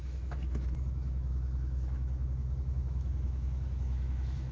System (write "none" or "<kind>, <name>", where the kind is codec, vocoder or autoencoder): autoencoder, DAC-VAE